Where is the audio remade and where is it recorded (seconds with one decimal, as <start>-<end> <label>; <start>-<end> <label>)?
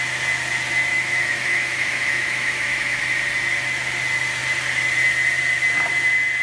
0.0-0.9 recorded; 0.9-3.0 remade; 3.0-6.4 recorded